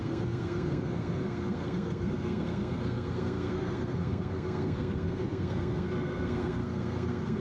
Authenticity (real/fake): fake